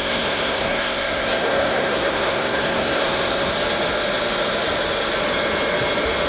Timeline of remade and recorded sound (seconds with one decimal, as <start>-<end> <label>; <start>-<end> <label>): 0.0-3.5 remade; 3.5-6.3 recorded